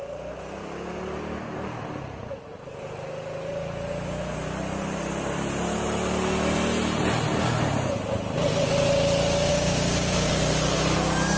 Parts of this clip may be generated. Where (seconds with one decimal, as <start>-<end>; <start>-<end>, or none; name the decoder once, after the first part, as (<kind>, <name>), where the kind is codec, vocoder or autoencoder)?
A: 9.5-10.3 (codec, DAC)